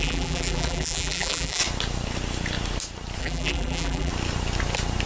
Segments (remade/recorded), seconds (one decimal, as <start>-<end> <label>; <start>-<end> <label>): 0.0-1.6 remade; 1.6-3.2 recorded; 3.2-4.1 remade; 4.1-5.1 recorded